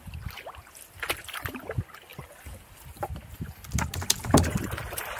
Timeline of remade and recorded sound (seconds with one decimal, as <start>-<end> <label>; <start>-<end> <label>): 0.0-5.2 recorded